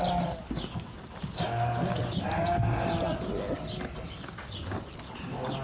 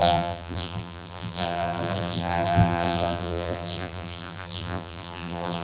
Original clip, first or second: first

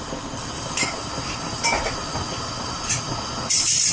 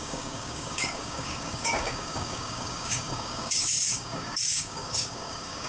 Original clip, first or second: first